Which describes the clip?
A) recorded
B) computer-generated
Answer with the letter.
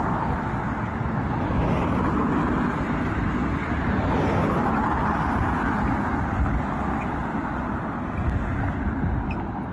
A